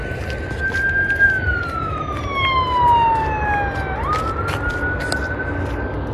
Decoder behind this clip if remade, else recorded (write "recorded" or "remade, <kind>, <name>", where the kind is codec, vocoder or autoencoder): recorded